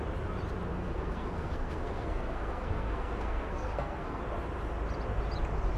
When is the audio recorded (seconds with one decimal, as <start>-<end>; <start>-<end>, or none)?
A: 0.0-0.7; 4.2-5.8